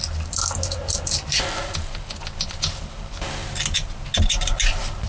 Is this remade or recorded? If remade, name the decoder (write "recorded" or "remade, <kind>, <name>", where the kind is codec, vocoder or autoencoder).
recorded